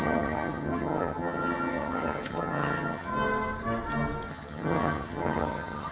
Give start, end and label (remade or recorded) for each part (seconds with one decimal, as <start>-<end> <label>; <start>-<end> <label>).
0.0-3.1 remade; 3.1-4.3 recorded; 4.3-5.9 remade